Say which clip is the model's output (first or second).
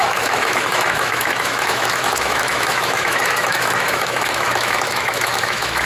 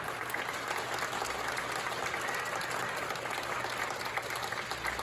first